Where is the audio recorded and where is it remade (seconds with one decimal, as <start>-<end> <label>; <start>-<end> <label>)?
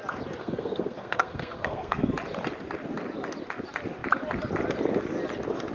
0.0-0.4 recorded; 0.4-2.1 remade; 2.1-5.7 recorded